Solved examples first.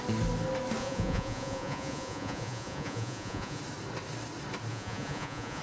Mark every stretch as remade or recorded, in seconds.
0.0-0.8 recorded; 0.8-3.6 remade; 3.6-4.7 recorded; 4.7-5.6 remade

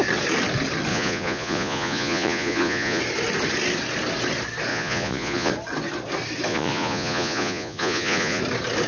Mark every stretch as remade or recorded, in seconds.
0.0-0.9 recorded; 0.9-3.0 remade; 3.0-4.7 recorded; 4.7-5.5 remade; 5.5-6.5 recorded; 6.5-8.4 remade; 8.4-8.9 recorded

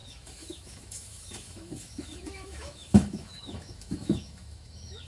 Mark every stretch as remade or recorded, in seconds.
0.0-5.1 remade

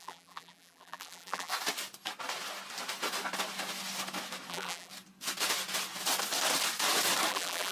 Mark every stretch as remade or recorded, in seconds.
0.0-1.5 remade; 1.5-4.5 recorded; 4.5-4.9 remade; 4.9-7.3 recorded; 7.3-7.7 remade